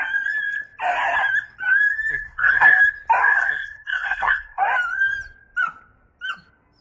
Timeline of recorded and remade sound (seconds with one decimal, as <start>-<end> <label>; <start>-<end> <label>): 0.0-2.1 recorded; 2.1-2.8 remade; 2.8-3.2 recorded; 3.2-4.6 remade; 4.6-6.8 recorded